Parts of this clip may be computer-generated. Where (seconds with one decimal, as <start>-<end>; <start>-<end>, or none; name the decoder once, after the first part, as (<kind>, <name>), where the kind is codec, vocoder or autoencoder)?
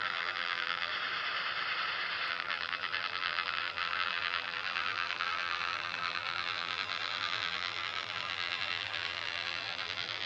0.0-0.9 (vocoder, BigVGAN v2); 2.3-10.3